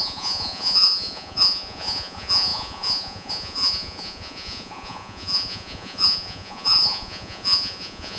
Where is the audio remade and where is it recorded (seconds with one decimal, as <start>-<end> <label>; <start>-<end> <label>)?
0.0-8.2 remade